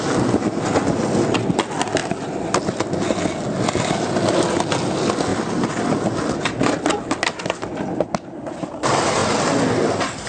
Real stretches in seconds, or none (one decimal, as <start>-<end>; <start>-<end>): 0.0-10.3